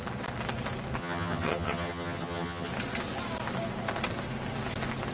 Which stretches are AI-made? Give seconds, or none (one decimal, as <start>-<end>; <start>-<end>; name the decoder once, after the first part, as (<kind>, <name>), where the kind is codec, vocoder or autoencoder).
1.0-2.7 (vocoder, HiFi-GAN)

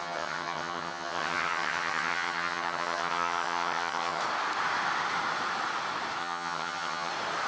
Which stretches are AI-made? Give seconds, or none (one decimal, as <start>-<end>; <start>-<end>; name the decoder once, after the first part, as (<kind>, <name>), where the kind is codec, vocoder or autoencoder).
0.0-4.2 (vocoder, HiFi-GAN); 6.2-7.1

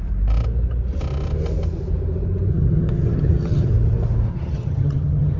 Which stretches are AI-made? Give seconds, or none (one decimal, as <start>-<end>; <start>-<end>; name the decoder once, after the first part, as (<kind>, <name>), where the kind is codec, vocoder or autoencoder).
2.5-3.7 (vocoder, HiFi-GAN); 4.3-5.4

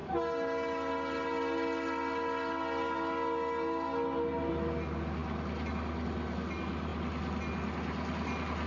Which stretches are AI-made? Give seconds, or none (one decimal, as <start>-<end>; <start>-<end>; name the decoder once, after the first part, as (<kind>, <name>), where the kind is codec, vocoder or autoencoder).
none

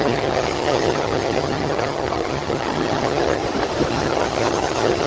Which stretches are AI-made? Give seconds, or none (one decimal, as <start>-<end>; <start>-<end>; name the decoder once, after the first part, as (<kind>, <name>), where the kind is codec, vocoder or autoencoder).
0.0-3.4 (vocoder, HiFi-GAN); 3.9-5.1

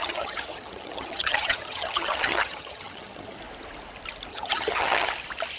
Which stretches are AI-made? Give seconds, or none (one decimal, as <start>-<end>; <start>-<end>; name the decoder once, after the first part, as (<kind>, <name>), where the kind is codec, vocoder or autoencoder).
0.0-3.4 (vocoder, HiFi-GAN); 4.3-5.1

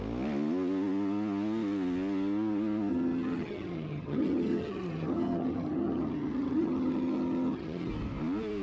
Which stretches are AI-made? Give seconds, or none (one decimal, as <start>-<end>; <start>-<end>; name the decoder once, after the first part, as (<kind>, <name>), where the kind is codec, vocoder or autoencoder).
2.9-7.9 (vocoder, HiFi-GAN)

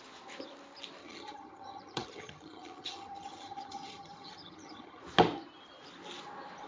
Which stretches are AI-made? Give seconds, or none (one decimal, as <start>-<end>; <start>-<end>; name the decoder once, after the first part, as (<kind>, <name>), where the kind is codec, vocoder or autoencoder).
1.0-5.0 (vocoder, HiFi-GAN)